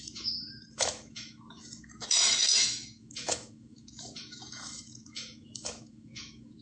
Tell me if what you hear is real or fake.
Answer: fake